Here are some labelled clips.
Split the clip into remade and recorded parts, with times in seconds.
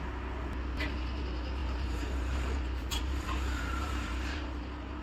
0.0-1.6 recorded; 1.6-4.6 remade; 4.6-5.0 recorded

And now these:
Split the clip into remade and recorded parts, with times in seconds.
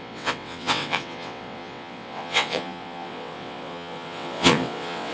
0.0-5.1 remade